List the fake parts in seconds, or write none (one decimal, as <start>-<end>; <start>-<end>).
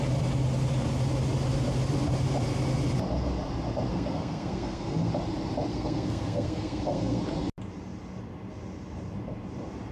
3.9-5.1; 5.7-7.2